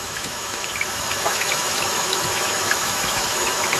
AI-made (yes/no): yes